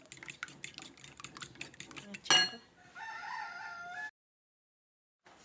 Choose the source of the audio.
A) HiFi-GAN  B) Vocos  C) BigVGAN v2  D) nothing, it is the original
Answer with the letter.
D